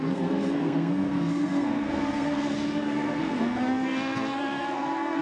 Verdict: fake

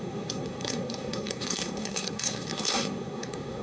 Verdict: fake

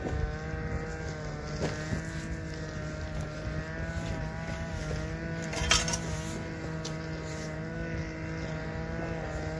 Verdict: real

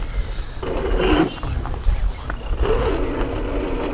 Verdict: real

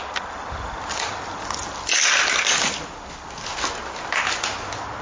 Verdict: real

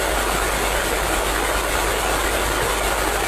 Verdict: real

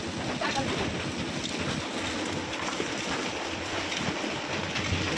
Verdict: real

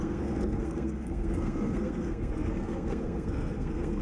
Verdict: fake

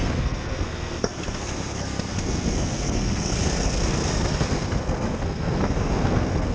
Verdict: fake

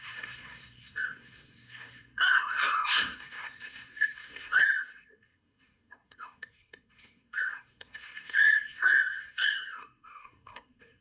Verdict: fake